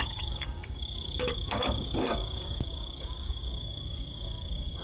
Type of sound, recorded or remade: remade